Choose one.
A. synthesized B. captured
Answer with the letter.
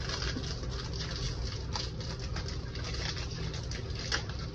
B